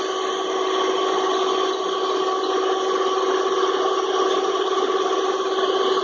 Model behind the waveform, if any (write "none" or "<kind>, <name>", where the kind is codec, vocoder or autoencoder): none